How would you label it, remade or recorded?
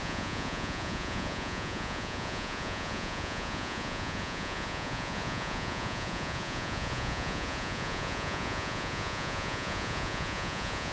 remade